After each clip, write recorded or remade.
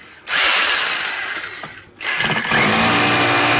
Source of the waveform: recorded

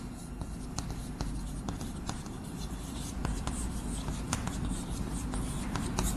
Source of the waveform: remade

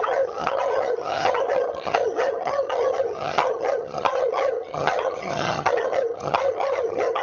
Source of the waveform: remade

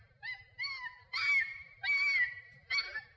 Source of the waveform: recorded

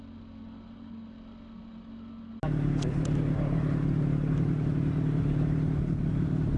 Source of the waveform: recorded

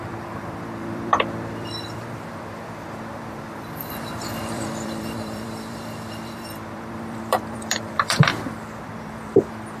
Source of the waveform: remade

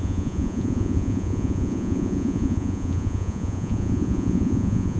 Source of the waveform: remade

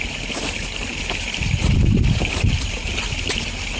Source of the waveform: recorded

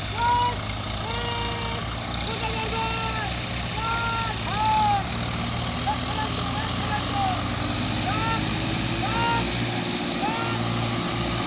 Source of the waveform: recorded